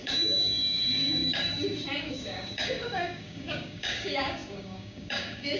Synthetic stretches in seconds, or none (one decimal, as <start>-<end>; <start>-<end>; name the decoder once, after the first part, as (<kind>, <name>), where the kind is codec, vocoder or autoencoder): 0.0-5.6 (codec, DAC)